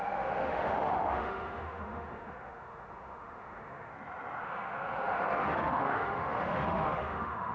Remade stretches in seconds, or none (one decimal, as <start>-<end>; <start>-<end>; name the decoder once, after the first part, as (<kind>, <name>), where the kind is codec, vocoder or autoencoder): 0.0-3.9 (autoencoder, DAC-VAE); 4.4-7.5